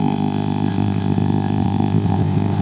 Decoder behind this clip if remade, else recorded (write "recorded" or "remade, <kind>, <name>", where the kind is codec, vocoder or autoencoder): remade, codec, ZipCodec